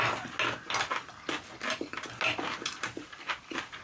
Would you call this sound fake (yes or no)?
no